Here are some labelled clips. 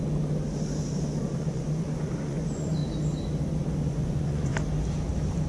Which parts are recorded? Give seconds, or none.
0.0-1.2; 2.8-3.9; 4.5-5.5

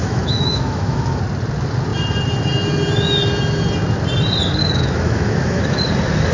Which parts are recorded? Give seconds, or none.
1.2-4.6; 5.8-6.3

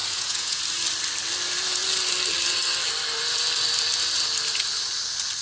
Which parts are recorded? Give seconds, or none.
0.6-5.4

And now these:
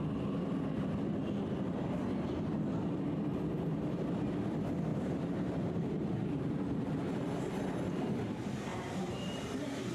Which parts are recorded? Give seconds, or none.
0.0-4.9; 6.5-8.7

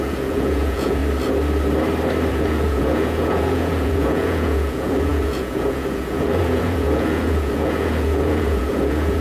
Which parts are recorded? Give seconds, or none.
1.0-2.3

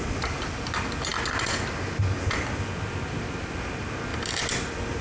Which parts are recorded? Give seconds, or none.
0.0-5.0